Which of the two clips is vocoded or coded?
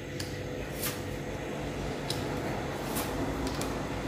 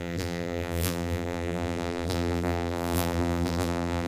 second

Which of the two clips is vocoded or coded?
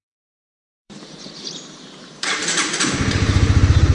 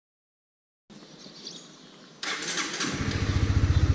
first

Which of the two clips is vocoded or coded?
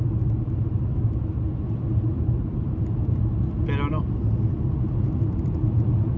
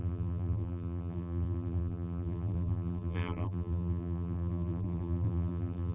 second